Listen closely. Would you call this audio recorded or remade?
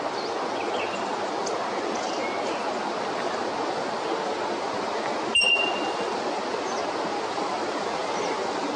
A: recorded